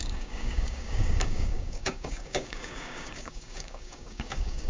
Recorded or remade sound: remade